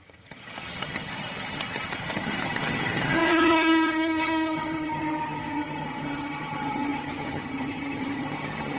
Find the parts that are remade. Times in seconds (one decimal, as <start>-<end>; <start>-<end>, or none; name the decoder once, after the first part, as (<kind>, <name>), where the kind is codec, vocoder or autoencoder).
0.0-8.8 (vocoder, HiFi-GAN)